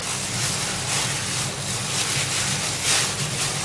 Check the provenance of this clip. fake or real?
real